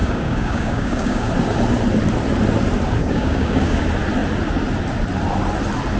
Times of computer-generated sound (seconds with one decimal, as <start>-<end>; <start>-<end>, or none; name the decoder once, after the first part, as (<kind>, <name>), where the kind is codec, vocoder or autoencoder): 0.0-1.3 (codec, DAC); 3.0-3.8